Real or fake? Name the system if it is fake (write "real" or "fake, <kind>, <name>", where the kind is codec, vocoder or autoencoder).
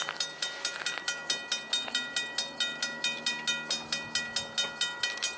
real